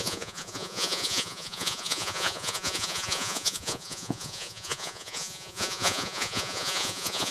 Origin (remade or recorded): remade